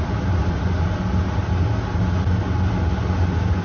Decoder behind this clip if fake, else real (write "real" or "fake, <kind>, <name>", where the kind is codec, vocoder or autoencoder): real